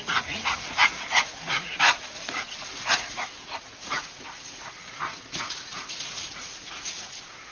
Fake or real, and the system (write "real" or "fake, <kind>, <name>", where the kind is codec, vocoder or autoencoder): fake, vocoder, Vocos